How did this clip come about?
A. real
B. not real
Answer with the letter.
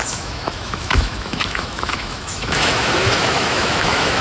B